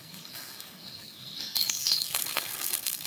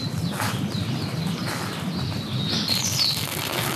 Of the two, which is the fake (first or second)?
first